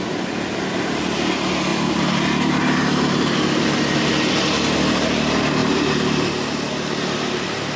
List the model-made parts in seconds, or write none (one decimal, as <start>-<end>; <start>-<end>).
none